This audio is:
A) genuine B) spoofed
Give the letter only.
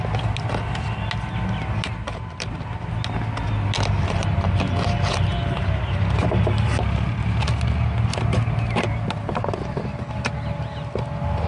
A